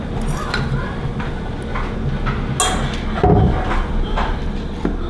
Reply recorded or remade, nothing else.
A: recorded